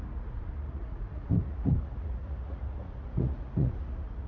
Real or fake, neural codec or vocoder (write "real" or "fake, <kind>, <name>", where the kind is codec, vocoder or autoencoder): fake, vocoder, Vocos